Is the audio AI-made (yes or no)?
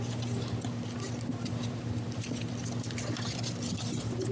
no